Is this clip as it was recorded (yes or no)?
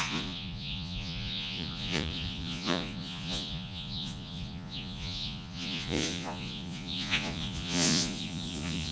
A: no